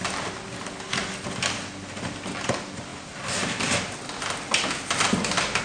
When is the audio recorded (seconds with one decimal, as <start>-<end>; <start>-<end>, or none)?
0.0-5.6